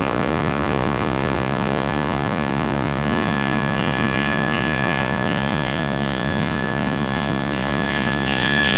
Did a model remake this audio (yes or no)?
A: yes